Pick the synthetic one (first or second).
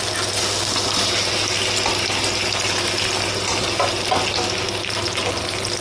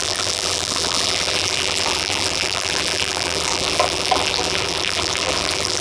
second